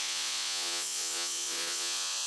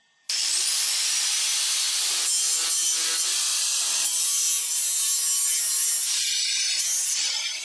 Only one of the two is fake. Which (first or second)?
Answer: first